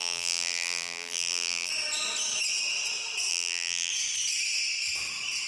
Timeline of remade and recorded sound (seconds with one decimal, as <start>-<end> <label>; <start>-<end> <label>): 0.0-1.7 remade; 1.7-3.3 recorded; 3.3-3.9 remade; 3.9-5.5 recorded